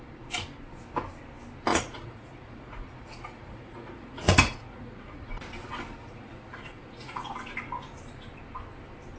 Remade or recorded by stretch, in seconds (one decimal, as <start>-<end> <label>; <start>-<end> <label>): 0.0-1.7 recorded; 1.7-5.3 remade; 5.3-6.0 recorded; 6.0-7.3 remade; 7.3-9.2 recorded

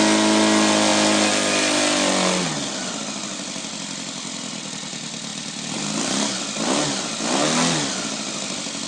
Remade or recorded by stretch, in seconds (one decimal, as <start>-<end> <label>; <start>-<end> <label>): 0.0-8.9 recorded

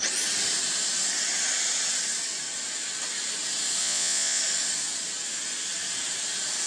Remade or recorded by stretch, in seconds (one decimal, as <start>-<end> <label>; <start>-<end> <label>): 0.0-3.8 recorded; 3.8-4.4 remade; 4.4-6.7 recorded

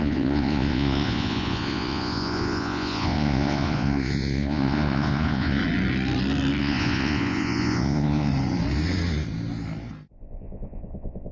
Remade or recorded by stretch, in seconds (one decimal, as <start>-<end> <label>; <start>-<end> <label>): 0.0-5.6 remade; 5.6-6.6 recorded; 6.6-8.3 remade; 8.3-10.1 recorded; 10.1-11.3 remade

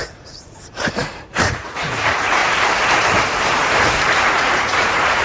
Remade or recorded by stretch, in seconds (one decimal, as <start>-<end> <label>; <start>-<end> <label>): 0.0-2.4 remade; 2.4-4.2 recorded; 4.2-5.2 remade

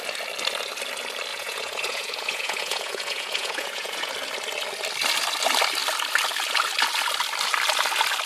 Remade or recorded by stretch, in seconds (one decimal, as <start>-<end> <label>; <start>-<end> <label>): 0.0-1.3 recorded; 1.3-4.1 remade; 4.1-8.3 recorded

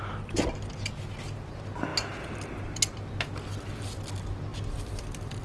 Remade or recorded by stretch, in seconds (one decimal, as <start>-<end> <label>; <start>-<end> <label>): 0.0-5.4 recorded

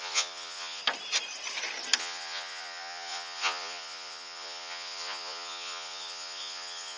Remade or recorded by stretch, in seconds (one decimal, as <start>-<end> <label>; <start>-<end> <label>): 0.0-0.8 remade; 0.8-2.0 recorded; 2.0-7.0 remade